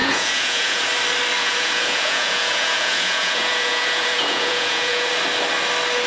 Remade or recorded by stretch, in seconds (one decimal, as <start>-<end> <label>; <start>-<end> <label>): 0.0-0.8 remade; 0.8-1.4 recorded; 1.4-5.1 remade; 5.1-6.1 recorded